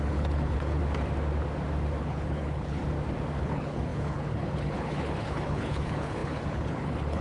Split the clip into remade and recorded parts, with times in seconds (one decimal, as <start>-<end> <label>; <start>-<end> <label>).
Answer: 0.0-0.8 remade; 0.8-2.0 recorded; 2.0-2.8 remade; 2.8-3.4 recorded; 3.4-7.2 remade